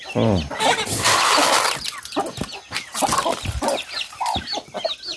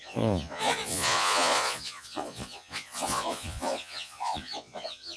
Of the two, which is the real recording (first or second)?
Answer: first